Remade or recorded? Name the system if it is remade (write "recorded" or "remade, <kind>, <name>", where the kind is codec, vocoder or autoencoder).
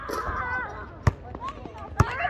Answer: recorded